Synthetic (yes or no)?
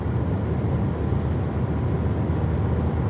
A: no